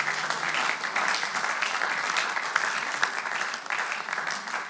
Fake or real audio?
real